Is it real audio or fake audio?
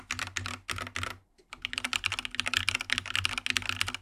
real